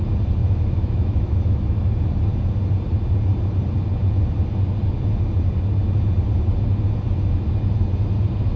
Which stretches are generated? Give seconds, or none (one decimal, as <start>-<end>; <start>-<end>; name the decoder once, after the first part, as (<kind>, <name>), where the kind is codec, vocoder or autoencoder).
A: 0.4-2.0 (autoencoder, DAC-VAE)